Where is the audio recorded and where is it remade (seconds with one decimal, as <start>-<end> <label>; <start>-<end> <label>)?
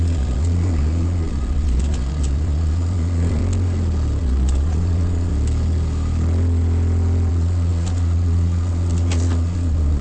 0.0-3.4 remade; 3.4-4.2 recorded; 4.2-5.3 remade; 5.3-7.3 recorded; 7.3-10.0 remade